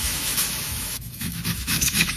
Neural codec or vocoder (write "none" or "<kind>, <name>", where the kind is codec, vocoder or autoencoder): autoencoder, DAC-VAE